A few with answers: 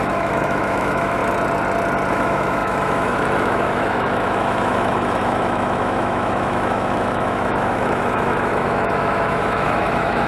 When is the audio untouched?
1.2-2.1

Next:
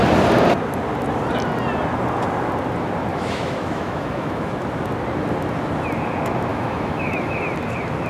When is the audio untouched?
0.0-3.1; 4.5-6.5; 7.4-8.1

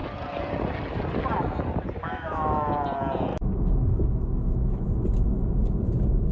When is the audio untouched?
0.0-2.0; 2.7-3.3; 4.8-6.3

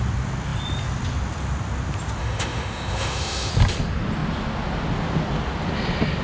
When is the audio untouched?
0.0-2.2; 3.5-6.2